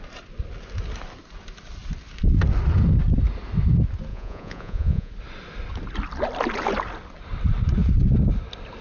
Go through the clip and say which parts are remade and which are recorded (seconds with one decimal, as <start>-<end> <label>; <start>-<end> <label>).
0.0-4.1 recorded; 4.1-5.1 remade; 5.1-8.8 recorded